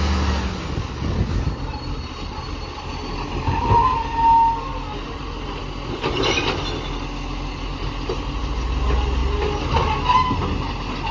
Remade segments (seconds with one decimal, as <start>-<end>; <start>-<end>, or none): 4.7-5.6